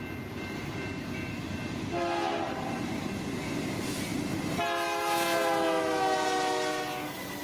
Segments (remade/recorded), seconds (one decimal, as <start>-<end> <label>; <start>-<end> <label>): 0.0-7.4 recorded